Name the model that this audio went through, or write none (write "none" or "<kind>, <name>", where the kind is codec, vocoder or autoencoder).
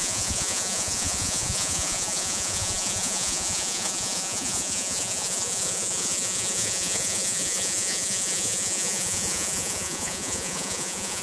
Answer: vocoder, Vocos